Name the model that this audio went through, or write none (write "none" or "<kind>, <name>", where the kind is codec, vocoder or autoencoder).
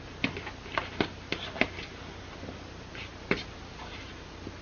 none